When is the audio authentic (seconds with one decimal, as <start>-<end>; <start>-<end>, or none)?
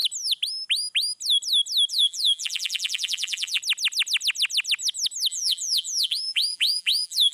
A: 0.0-1.9; 3.6-5.3